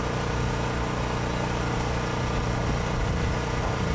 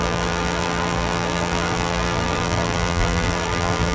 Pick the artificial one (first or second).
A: second